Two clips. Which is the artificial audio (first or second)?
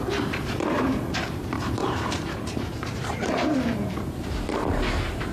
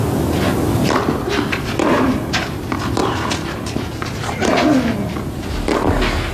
first